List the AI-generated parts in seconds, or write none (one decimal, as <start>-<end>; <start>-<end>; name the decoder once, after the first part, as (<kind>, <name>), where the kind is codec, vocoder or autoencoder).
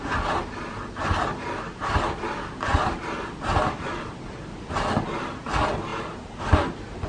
1.0-2.1 (vocoder, BigVGAN v2); 2.7-3.3; 5.9-6.4